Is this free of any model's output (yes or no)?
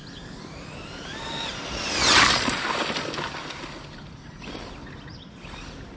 yes